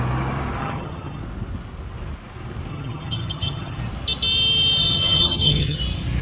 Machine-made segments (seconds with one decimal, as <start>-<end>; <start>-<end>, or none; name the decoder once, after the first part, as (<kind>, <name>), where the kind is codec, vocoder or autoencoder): 0.6-1.2 (vocoder, HiFi-GAN); 2.7-3.8; 4.8-5.8